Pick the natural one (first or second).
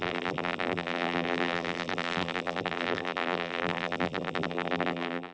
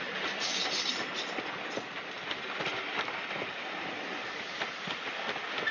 second